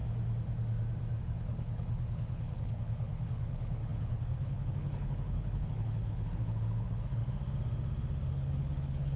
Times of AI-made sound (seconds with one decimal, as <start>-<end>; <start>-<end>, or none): 1.2-7.2; 8.3-9.2